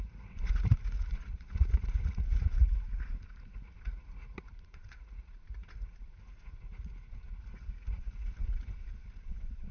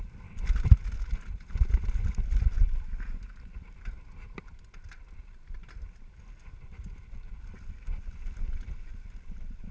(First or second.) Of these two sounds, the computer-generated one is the first